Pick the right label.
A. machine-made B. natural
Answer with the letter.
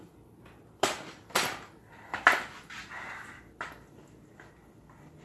B